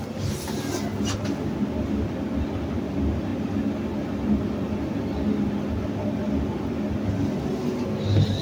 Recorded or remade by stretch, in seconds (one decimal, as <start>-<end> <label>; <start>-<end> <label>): 0.0-8.4 recorded